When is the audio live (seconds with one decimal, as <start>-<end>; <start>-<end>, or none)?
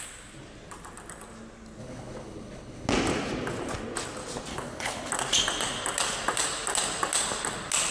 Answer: 0.0-1.8; 2.9-4.5; 5.1-7.9